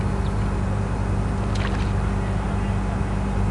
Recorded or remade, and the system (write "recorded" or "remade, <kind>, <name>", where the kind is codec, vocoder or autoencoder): recorded